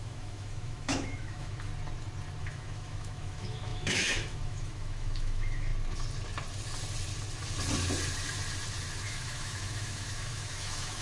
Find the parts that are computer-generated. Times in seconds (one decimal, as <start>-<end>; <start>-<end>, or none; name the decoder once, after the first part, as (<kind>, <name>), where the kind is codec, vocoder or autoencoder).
0.0-1.7 (autoencoder, DAC-VAE); 2.4-5.7; 9.0-11.0